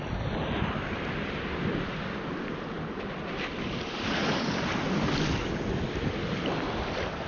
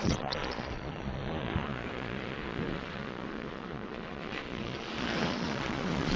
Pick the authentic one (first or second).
first